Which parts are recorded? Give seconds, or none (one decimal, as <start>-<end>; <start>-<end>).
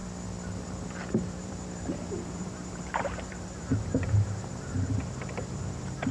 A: 0.0-0.6